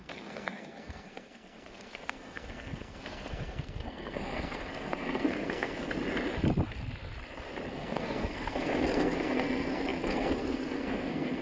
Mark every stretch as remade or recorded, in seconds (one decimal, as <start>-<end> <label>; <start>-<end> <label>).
0.0-5.9 remade; 5.9-7.7 recorded; 7.7-11.4 remade